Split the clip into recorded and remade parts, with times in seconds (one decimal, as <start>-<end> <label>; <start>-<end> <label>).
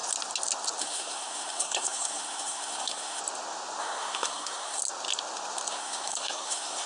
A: 0.0-0.8 recorded; 0.8-3.2 remade; 3.2-3.8 recorded; 3.8-4.8 remade; 4.8-5.7 recorded; 5.7-6.9 remade